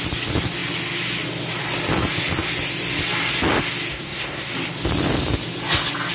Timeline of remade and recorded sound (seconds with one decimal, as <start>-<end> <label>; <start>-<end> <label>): 0.0-3.9 recorded; 3.9-4.5 remade; 4.5-6.1 recorded